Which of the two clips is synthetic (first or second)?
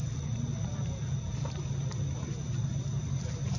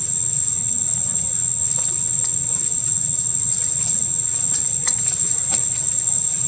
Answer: second